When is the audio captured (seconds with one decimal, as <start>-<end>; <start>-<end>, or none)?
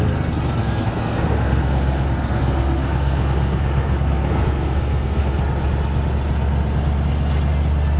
0.0-0.6; 5.4-8.0